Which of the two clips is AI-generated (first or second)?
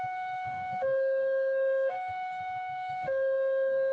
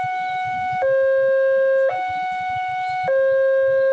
first